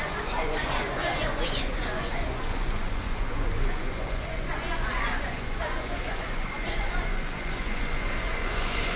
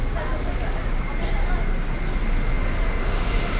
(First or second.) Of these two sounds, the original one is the second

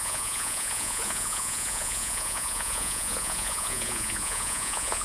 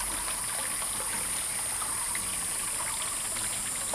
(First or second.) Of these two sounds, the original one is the second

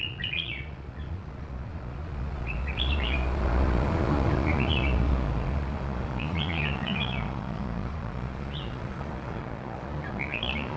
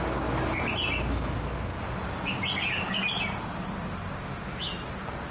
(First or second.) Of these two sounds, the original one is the second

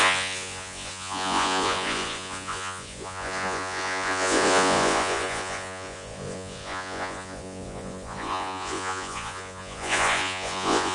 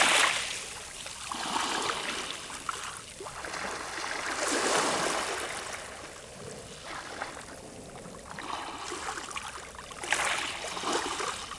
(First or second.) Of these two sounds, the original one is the second